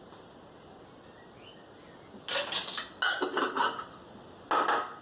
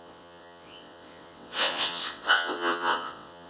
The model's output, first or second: second